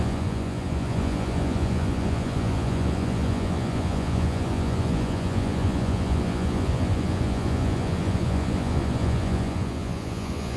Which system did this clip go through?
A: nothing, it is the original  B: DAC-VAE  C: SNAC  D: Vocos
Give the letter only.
D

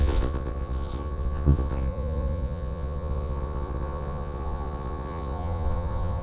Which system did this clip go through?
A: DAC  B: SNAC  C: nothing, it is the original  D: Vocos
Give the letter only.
D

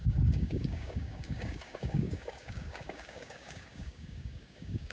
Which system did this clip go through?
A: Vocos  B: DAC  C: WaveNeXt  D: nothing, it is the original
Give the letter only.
B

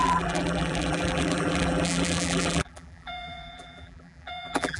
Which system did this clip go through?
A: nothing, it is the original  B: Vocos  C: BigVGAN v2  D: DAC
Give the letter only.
C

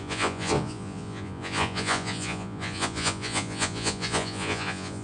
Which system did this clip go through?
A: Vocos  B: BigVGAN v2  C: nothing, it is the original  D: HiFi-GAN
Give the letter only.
A